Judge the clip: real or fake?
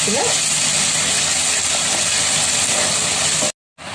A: real